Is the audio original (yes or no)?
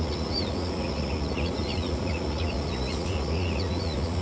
no